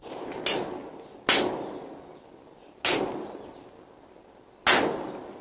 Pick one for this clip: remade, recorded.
recorded